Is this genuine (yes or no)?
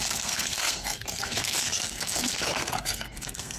no